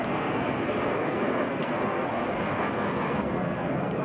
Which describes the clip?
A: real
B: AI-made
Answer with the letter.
B